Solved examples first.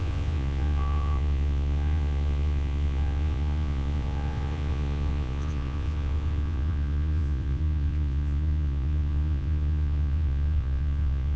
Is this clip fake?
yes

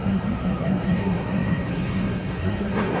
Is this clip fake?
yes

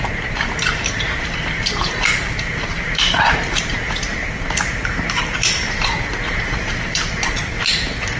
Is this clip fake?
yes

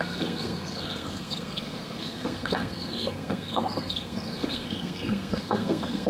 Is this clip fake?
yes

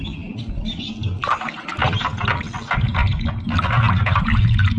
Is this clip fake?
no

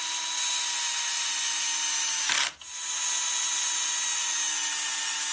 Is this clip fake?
no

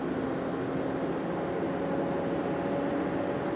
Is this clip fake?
no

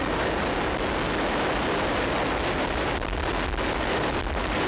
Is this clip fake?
no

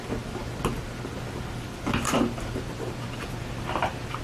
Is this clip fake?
no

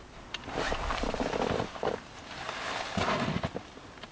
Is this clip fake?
yes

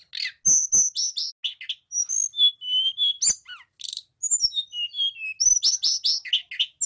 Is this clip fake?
no